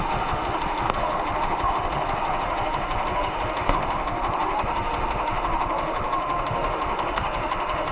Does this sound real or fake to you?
fake